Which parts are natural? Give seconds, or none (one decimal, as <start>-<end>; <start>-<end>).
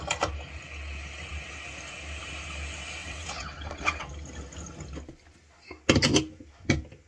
0.0-3.0; 4.1-7.1